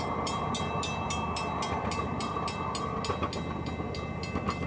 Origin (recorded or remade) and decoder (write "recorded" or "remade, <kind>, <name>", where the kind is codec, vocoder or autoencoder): recorded